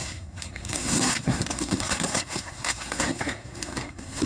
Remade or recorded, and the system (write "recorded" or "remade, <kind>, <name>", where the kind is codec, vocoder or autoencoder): remade, codec, SNAC